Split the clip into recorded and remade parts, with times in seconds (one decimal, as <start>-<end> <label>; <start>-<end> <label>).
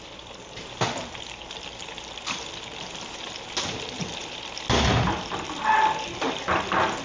0.0-7.0 recorded